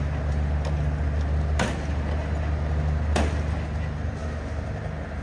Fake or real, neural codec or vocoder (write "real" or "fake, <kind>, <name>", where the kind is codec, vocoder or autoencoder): real